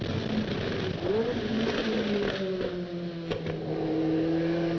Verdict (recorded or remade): recorded